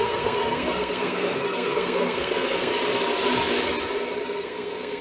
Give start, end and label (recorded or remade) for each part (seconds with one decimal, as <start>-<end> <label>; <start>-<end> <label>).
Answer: 0.0-2.7 remade; 2.7-4.2 recorded; 4.2-5.0 remade